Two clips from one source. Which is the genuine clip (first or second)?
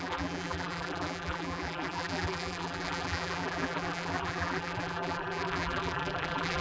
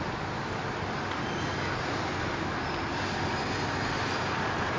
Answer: second